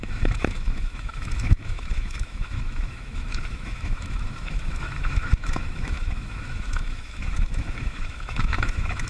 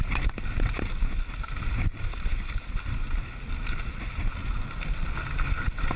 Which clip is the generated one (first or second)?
first